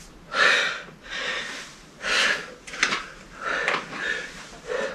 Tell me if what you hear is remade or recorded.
recorded